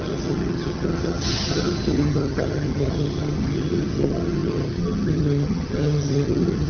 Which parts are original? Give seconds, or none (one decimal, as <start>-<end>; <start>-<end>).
none